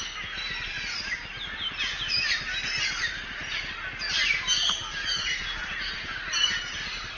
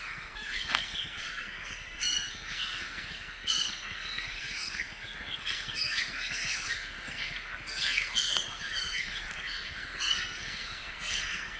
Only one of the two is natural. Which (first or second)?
first